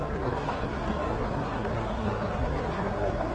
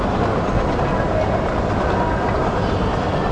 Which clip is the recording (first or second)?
second